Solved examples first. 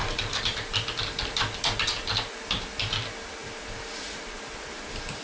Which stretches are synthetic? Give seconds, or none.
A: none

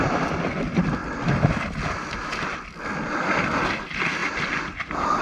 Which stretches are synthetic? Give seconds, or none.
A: none

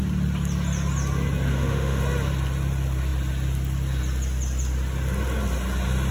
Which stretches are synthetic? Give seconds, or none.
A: 1.5-2.0 (autoencoder, DAC-VAE)

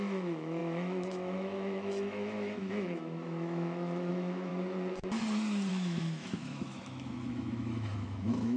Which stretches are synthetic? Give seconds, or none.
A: 0.0-4.5 (autoencoder, DAC-VAE); 5.7-8.6

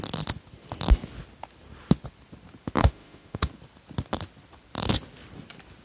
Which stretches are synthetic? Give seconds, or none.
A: 2.8-3.5 (autoencoder, DAC-VAE)